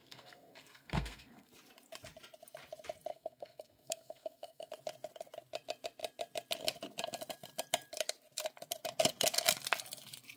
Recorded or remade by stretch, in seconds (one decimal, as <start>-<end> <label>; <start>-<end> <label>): 0.0-1.5 remade; 1.5-3.1 recorded; 3.1-4.7 remade; 4.7-10.4 recorded

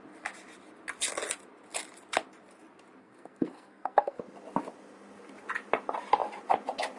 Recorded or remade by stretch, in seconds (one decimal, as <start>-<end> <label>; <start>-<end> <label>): 0.0-3.0 recorded; 3.0-4.2 remade; 4.2-7.0 recorded

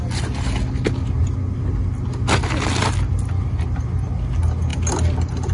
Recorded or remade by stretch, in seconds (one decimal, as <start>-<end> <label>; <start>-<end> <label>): 0.0-5.5 recorded

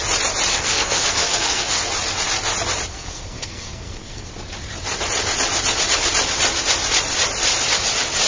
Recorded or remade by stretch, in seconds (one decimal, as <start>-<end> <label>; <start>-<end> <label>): 0.0-0.5 recorded; 0.5-1.8 remade; 1.8-2.9 recorded; 2.9-4.3 remade; 4.3-8.3 recorded

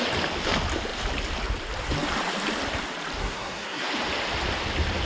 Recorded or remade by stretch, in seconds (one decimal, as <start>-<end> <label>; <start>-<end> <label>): 0.0-3.2 recorded; 3.2-3.9 remade; 3.9-5.1 recorded

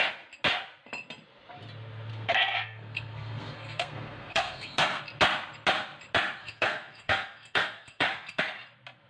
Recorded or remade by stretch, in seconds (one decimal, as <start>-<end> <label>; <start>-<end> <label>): 0.0-2.1 recorded; 2.1-5.0 remade; 5.0-6.4 recorded; 6.4-8.4 remade; 8.4-9.1 recorded

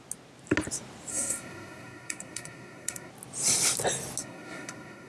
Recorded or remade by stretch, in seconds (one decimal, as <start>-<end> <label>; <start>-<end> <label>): 0.0-1.1 recorded; 1.1-3.1 remade; 3.1-4.2 recorded; 4.2-5.1 remade